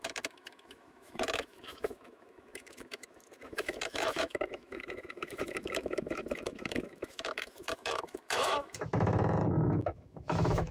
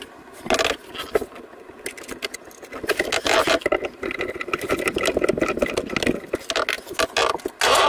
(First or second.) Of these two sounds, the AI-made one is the first